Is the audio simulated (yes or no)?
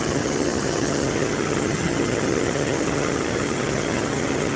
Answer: yes